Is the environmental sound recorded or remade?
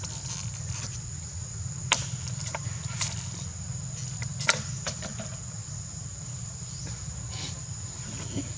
recorded